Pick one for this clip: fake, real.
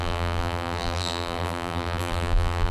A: fake